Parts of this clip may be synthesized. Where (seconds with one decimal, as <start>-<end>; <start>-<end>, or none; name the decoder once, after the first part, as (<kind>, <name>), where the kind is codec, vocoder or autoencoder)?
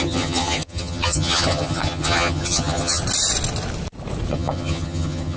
0.0-3.0 (vocoder, HiFi-GAN); 4.3-5.4